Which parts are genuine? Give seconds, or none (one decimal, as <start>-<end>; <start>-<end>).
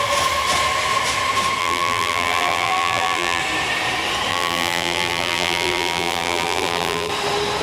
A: 0.0-1.6; 3.4-4.3; 7.1-7.6